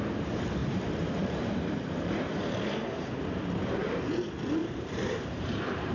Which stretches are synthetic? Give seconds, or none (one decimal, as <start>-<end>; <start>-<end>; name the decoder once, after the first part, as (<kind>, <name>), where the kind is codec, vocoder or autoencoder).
0.6-4.1 (vocoder, BigVGAN v2); 4.6-5.9

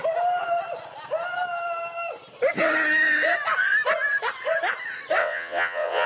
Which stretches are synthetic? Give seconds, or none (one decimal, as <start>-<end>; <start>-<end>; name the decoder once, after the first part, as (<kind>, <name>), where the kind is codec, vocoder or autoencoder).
5.2-6.1 (vocoder, WaveNeXt)

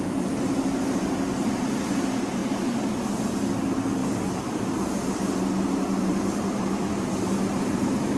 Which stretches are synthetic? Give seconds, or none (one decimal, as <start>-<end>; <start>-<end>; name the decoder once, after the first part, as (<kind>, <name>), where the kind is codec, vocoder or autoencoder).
2.4-3.1 (vocoder, BigVGAN v2); 6.1-6.8

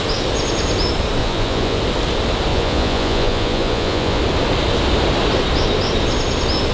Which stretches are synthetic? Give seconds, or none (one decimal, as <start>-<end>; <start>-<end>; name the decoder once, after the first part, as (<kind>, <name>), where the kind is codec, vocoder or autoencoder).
1.2-1.8 (vocoder, Vocos); 2.5-4.2